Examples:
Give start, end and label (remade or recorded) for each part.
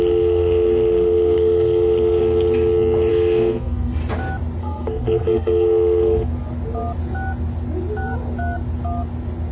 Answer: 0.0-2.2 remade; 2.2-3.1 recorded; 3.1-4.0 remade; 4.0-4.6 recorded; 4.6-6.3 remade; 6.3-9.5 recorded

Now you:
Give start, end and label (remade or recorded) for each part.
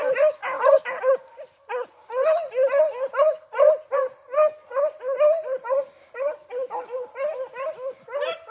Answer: 0.0-8.5 recorded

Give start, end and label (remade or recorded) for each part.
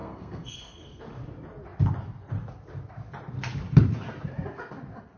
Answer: 0.0-1.0 remade; 1.0-5.2 recorded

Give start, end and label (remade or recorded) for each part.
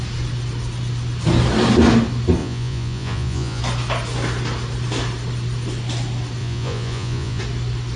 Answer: 0.0-2.4 recorded; 2.4-3.6 remade; 3.6-6.4 recorded; 6.4-7.4 remade; 7.4-8.0 recorded